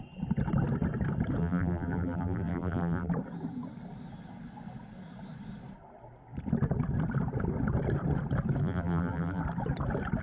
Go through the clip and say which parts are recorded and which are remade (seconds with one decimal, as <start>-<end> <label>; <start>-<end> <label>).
0.0-1.4 recorded; 1.4-3.1 remade; 3.1-8.6 recorded; 8.6-9.4 remade; 9.4-10.2 recorded